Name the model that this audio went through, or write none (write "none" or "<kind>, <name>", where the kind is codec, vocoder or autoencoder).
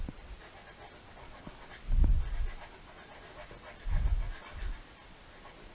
none